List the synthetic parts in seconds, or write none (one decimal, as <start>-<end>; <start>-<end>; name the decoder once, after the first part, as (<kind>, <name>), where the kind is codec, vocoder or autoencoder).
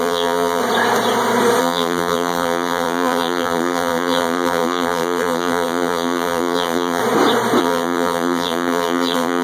0.0-0.6 (vocoder, BigVGAN v2); 1.6-7.0; 7.6-9.4